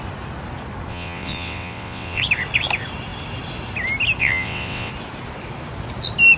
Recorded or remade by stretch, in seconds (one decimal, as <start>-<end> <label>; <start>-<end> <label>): 0.0-0.9 recorded; 0.9-2.2 remade; 2.2-4.2 recorded; 4.2-4.9 remade; 4.9-6.4 recorded